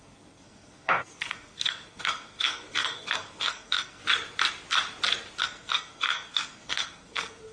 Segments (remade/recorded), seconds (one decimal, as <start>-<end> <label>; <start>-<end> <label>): 0.0-4.0 remade; 4.0-5.4 recorded; 5.4-7.5 remade